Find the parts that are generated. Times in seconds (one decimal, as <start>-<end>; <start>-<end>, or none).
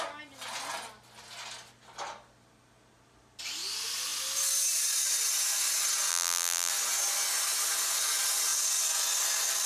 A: 6.1-6.7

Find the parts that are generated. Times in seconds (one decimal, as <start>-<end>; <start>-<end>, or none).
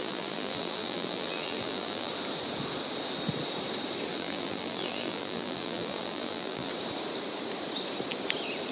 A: 0.0-2.1; 4.1-6.7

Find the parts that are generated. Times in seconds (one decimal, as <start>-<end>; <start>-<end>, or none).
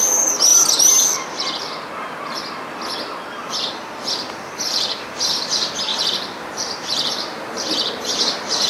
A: 0.0-0.5; 4.1-8.7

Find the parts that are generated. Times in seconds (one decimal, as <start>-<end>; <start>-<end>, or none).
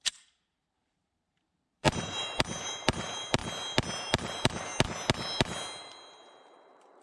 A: 0.0-3.4; 4.1-4.7; 5.8-7.0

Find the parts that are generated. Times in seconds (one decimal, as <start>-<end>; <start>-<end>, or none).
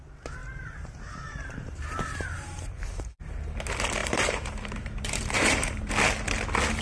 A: 0.4-3.6; 4.0-5.9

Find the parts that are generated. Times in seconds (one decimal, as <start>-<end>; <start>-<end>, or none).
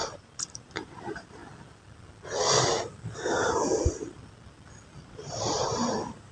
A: 0.0-1.4; 5.0-6.3